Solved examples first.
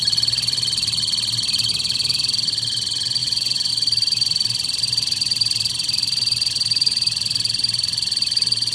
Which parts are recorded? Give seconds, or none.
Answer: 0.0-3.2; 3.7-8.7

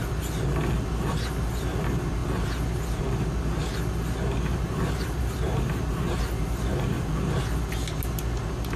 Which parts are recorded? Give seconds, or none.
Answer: 0.0-4.5; 7.1-8.8

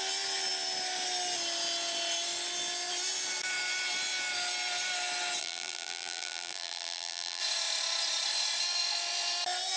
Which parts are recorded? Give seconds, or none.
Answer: 0.0-5.4; 7.4-9.8

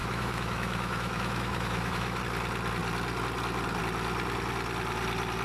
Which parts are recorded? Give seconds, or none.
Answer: 2.2-5.4